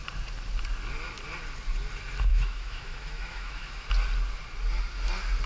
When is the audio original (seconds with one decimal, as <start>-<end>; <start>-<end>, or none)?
0.0-2.3; 3.9-5.5